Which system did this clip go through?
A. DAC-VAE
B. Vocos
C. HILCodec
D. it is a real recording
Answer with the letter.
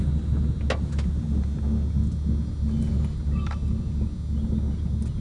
D